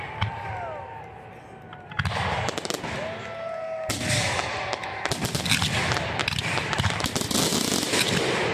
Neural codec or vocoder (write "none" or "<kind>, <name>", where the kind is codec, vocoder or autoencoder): none